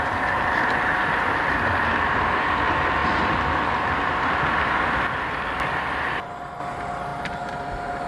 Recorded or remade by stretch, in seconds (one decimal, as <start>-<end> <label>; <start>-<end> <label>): 0.0-8.1 recorded